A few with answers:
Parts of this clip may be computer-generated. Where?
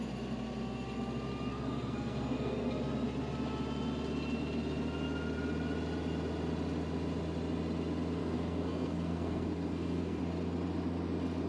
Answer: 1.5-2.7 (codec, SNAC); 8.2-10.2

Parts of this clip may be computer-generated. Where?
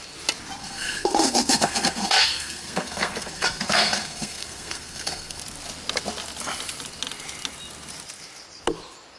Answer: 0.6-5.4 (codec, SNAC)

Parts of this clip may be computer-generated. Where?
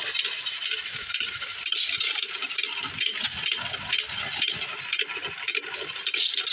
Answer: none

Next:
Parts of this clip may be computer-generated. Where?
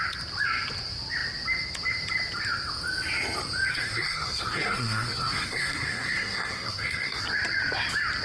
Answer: 3.7-7.2 (codec, SNAC)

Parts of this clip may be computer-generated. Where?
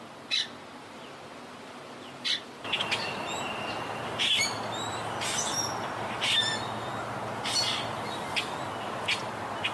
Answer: none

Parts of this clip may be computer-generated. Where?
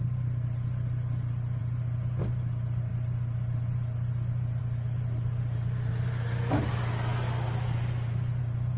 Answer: none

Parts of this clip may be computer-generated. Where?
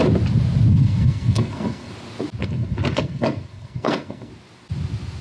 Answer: 0.7-1.9 (codec, SNAC); 2.4-4.3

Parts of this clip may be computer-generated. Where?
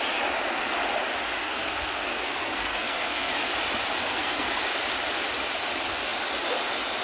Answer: 1.4-3.5 (codec, SNAC); 4.0-4.5